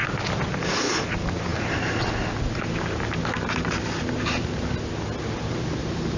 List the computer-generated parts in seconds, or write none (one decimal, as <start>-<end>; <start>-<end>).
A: none